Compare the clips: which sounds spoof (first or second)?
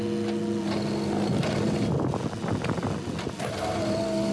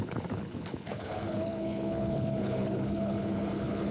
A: second